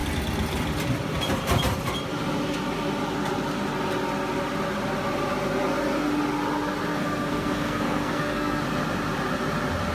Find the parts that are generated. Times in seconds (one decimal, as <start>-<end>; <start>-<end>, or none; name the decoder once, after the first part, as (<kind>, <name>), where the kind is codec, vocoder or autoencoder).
6.9-8.6 (codec, SNAC)